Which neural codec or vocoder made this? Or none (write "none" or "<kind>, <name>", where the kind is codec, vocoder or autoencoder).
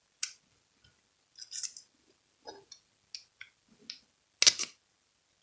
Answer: none